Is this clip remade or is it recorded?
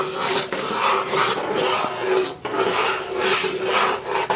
recorded